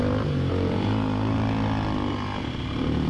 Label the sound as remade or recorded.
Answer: recorded